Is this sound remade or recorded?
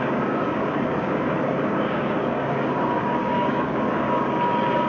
remade